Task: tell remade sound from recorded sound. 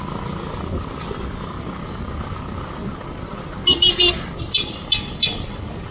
recorded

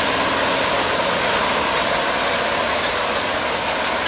recorded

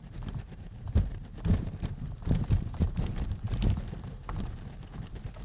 remade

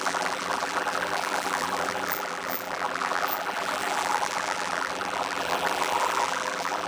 remade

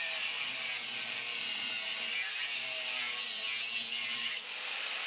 recorded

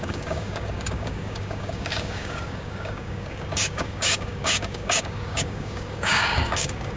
remade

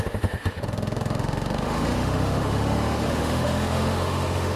remade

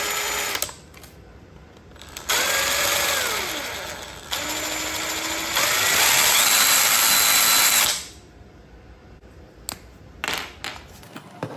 recorded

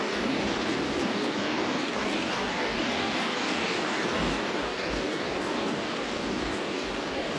remade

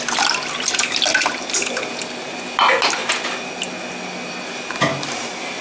recorded